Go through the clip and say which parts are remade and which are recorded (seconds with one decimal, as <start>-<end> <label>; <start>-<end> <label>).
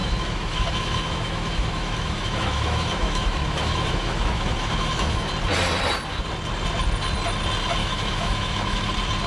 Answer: 0.0-5.3 remade; 5.3-7.8 recorded; 7.8-8.9 remade; 8.9-9.3 recorded